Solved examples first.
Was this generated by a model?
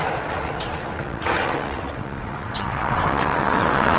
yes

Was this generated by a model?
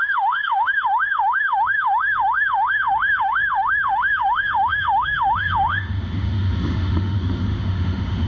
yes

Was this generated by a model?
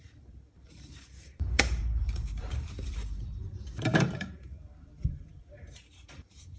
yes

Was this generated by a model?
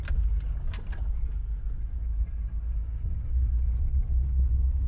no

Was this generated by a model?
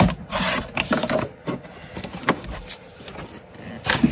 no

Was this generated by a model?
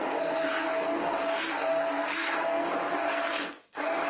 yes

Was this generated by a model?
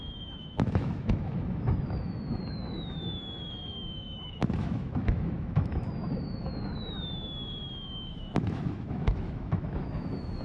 yes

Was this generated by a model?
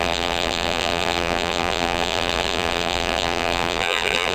yes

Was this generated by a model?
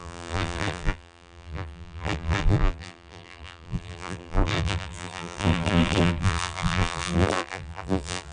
yes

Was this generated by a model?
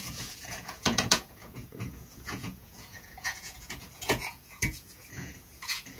yes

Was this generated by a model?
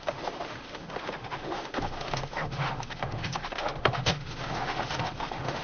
yes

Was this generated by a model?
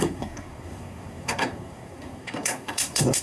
yes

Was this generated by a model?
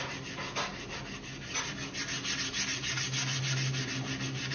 no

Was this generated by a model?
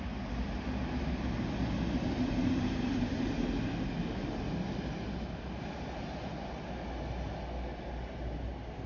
no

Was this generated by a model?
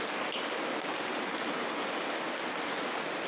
no